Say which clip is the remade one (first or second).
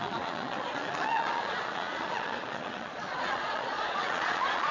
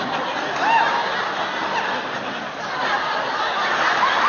first